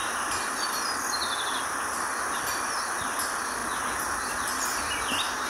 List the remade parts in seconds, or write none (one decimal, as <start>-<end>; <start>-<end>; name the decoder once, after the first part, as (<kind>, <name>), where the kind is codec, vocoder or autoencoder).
none